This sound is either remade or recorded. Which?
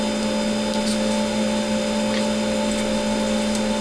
recorded